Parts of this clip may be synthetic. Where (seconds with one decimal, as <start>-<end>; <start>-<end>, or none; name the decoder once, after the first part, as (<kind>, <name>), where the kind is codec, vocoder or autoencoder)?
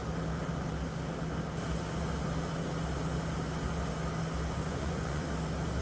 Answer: 4.6-5.3 (vocoder, Vocos)